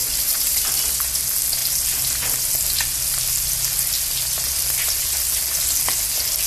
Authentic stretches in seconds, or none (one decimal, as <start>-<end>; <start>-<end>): 0.6-6.5